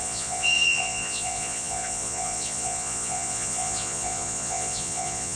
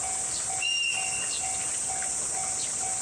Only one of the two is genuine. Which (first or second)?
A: second